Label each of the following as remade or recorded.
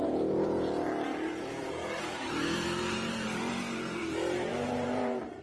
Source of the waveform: remade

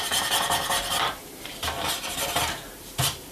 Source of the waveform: remade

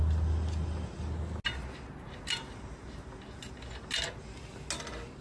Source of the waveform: recorded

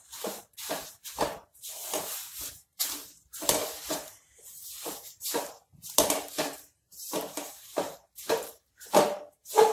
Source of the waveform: remade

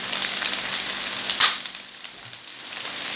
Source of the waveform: remade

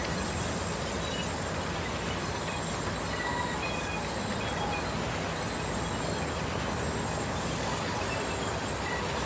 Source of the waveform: recorded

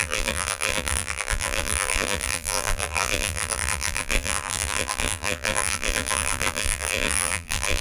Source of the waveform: remade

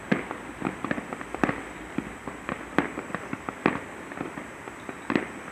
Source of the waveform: recorded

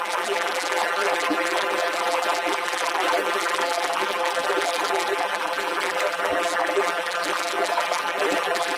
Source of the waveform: remade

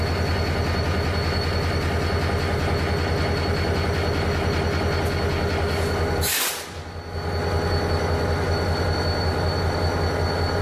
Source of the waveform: recorded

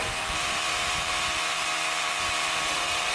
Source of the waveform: remade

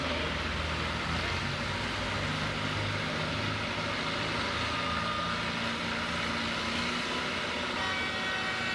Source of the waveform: recorded